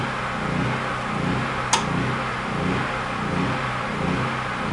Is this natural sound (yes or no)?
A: yes